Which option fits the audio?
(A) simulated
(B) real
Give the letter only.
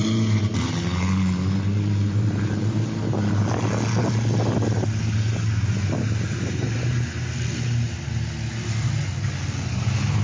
B